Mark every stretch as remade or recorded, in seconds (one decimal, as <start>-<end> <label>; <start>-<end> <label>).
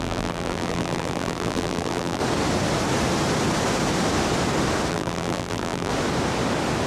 0.0-2.2 remade; 2.2-4.9 recorded; 4.9-5.9 remade; 5.9-6.9 recorded